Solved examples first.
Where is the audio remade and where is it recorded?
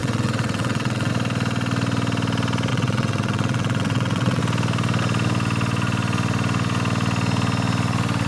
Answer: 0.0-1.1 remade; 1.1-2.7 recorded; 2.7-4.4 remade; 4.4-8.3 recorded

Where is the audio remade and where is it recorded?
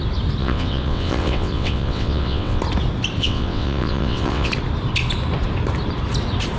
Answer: 0.0-0.4 recorded; 0.4-2.6 remade; 2.6-3.2 recorded; 3.2-4.5 remade; 4.5-6.6 recorded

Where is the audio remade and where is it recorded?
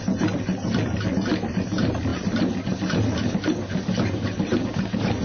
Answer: 0.0-5.2 recorded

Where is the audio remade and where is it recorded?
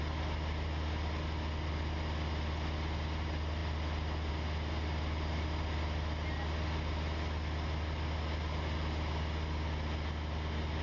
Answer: 0.0-10.8 recorded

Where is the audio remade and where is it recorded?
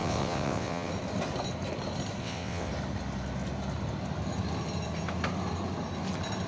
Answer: 0.0-0.9 remade; 0.9-2.2 recorded; 2.2-2.7 remade; 2.7-6.5 recorded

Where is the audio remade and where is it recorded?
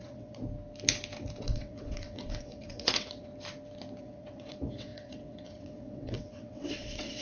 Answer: 0.0-0.4 remade; 0.4-1.4 recorded; 1.4-3.3 remade; 3.3-4.0 recorded; 4.0-7.2 remade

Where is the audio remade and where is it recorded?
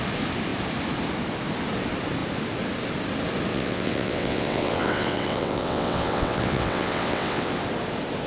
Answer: 0.0-3.5 recorded; 3.5-7.5 remade; 7.5-8.3 recorded